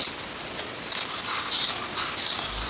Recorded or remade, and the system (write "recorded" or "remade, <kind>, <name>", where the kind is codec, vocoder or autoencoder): recorded